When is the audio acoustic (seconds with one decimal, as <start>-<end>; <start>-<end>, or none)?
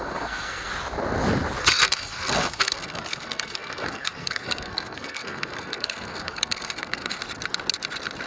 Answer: 0.7-1.6; 7.2-8.3